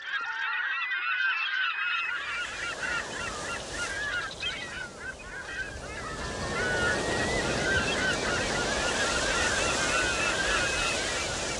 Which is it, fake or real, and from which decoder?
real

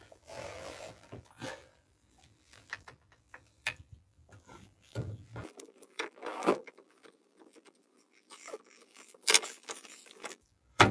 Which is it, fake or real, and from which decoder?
fake, vocoder, BigVGAN v2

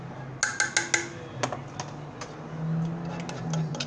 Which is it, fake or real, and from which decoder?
real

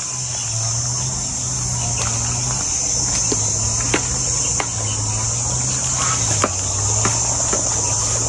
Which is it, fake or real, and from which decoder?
real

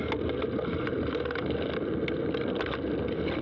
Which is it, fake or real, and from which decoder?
real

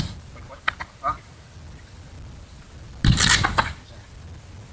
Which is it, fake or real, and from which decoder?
real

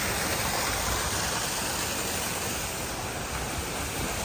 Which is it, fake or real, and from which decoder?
real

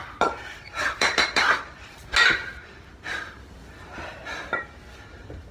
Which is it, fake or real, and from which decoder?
fake, vocoder, BigVGAN v2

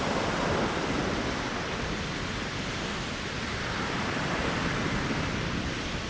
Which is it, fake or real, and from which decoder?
fake, vocoder, BigVGAN v2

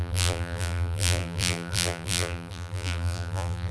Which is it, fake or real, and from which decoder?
fake, vocoder, BigVGAN v2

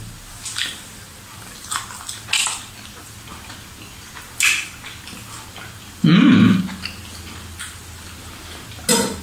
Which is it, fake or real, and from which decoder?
real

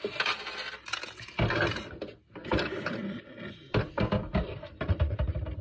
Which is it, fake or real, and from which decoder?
real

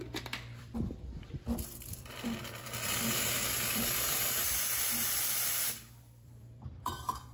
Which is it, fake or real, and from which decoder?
fake, vocoder, BigVGAN v2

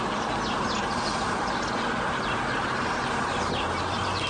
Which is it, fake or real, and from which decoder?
real